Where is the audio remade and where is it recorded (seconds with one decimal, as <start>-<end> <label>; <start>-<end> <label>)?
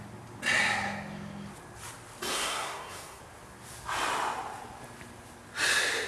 0.0-2.3 recorded; 2.3-3.2 remade; 3.2-6.1 recorded